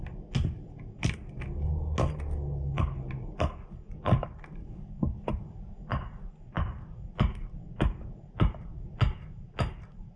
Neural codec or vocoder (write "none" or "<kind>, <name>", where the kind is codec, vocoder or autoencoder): none